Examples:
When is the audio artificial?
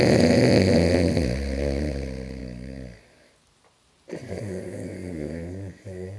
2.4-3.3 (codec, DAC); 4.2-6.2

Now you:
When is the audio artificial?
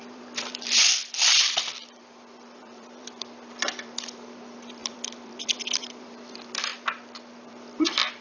0.0-6.7 (vocoder, BigVGAN v2); 7.5-8.2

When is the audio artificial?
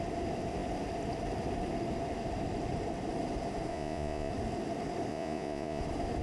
3.7-4.3 (vocoder, Vocos); 5.1-5.8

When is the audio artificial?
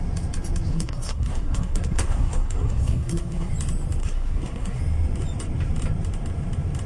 0.7-3.5 (codec, SNAC); 4.0-4.8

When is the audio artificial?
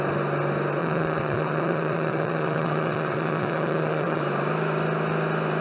0.8-4.2 (vocoder, Vocos)